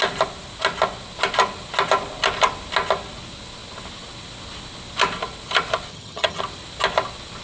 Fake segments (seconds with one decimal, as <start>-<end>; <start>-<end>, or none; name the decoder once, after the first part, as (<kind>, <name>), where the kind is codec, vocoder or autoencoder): 5.9-6.4 (vocoder, HiFi-GAN)